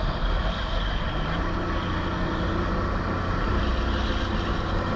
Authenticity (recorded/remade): recorded